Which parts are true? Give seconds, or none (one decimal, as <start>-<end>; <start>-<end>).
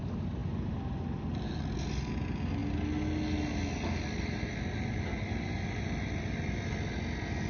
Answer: 0.0-7.5